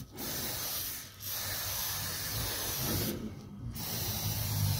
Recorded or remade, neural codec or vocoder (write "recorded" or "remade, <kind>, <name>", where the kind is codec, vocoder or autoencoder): recorded